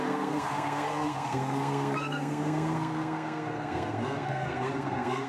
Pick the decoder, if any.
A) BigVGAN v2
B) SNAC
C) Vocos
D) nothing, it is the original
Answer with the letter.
B